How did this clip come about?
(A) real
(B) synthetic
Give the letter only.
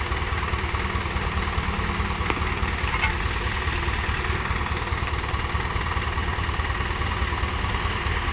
A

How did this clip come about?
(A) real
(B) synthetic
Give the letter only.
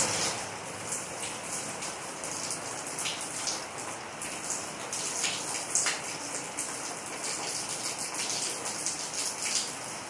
A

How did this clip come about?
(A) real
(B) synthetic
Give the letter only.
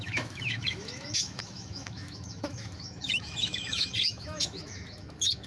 B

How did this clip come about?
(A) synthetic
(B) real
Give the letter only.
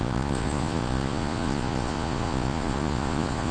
A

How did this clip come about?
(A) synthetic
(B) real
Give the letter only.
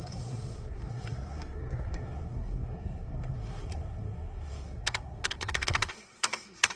A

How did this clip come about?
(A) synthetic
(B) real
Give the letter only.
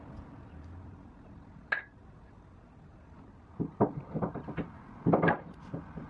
B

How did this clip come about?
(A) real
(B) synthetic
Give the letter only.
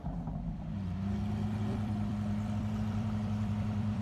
B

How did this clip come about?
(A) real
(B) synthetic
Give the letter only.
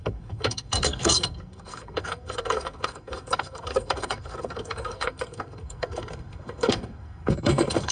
B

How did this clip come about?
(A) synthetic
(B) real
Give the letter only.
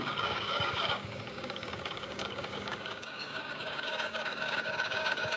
A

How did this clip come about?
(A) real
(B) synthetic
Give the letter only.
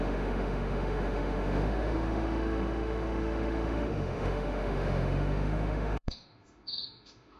B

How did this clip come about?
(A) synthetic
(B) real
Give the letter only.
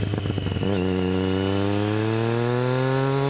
B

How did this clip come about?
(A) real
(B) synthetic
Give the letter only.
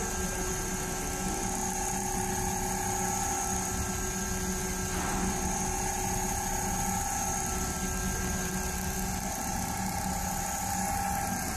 A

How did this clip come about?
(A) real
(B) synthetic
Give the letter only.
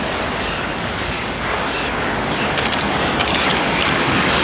B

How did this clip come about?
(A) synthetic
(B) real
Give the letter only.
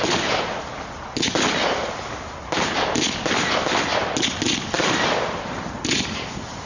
B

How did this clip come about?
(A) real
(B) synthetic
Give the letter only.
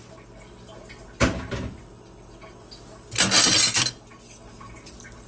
A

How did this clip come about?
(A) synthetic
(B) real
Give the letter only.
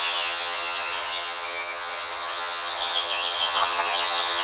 A